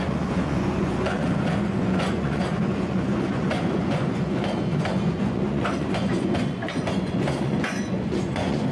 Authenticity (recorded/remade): remade